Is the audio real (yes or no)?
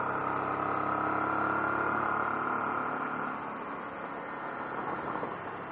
yes